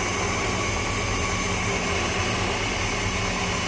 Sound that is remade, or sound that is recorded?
recorded